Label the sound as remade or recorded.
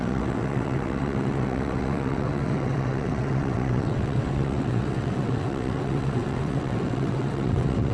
remade